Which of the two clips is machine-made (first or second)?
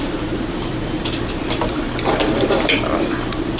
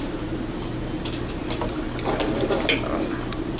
first